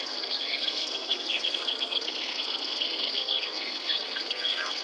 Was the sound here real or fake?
fake